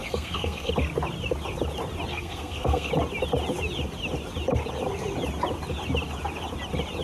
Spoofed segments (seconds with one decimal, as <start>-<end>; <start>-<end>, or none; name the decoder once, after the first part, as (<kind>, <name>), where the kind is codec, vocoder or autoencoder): 0.0-0.7 (codec, SNAC); 2.1-2.9